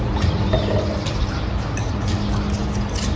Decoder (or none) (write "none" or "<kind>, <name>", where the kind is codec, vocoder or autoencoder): none